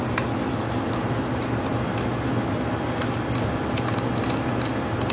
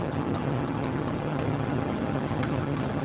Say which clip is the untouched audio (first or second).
first